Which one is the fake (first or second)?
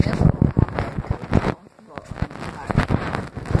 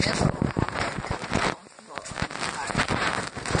second